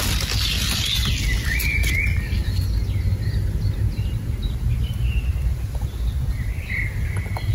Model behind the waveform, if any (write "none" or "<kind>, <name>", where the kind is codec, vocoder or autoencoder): none